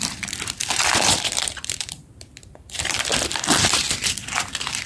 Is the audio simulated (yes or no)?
yes